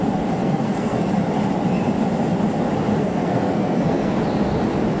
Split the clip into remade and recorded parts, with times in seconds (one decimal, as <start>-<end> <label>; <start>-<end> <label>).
0.0-0.4 recorded; 0.4-1.1 remade; 1.1-2.9 recorded; 2.9-4.2 remade; 4.2-5.0 recorded